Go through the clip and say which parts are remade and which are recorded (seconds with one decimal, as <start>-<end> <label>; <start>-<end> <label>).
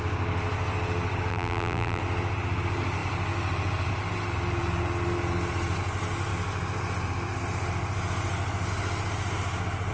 0.0-1.3 recorded; 1.3-2.0 remade; 2.0-9.9 recorded